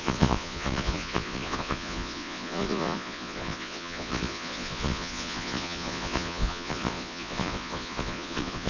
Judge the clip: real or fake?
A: fake